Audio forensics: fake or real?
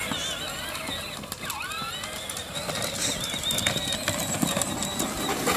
real